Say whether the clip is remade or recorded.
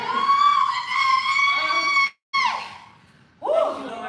recorded